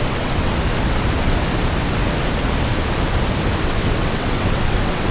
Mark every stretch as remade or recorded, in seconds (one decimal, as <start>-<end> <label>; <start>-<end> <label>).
0.0-0.5 remade; 0.5-3.6 recorded; 3.6-5.1 remade